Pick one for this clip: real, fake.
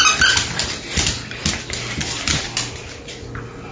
real